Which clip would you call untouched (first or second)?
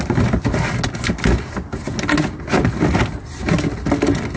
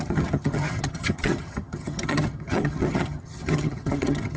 first